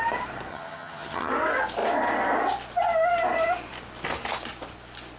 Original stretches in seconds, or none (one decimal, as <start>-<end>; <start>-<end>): 0.0-0.5; 1.3-5.2